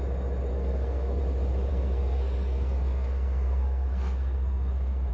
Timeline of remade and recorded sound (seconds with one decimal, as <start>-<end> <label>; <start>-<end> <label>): 0.0-0.5 recorded; 0.5-1.2 remade; 1.2-1.7 recorded; 1.7-5.1 remade